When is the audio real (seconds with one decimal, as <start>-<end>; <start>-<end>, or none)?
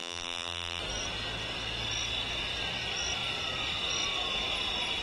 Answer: 0.8-5.0